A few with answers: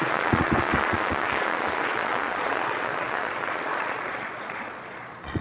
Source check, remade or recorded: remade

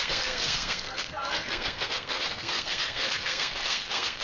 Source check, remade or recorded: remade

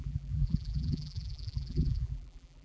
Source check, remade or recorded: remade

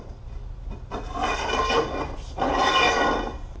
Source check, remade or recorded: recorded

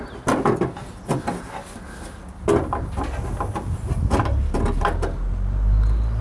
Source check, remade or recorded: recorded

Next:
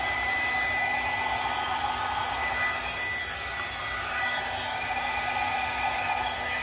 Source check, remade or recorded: recorded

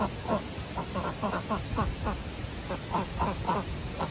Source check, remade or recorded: recorded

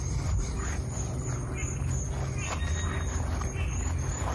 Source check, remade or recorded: recorded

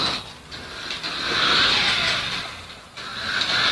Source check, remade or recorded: recorded